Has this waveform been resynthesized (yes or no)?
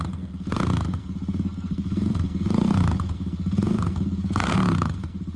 yes